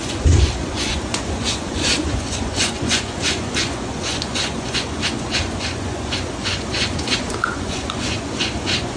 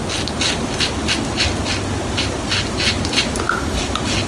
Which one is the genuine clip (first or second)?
second